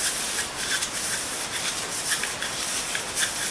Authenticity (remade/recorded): recorded